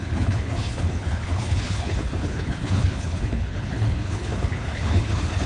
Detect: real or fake fake